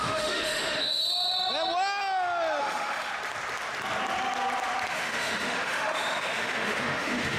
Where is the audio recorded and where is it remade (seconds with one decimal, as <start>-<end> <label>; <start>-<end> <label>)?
0.0-1.0 remade; 1.0-2.6 recorded; 2.6-3.1 remade; 3.1-4.9 recorded; 4.9-7.4 remade